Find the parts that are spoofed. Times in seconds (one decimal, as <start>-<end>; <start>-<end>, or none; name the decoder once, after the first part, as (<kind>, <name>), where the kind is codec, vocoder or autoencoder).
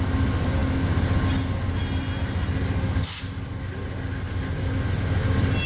none